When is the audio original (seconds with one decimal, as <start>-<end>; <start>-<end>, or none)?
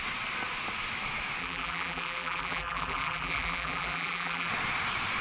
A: 0.0-1.4; 4.5-5.2